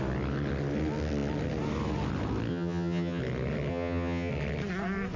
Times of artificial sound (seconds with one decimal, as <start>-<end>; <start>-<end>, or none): 2.5-3.2; 3.7-4.3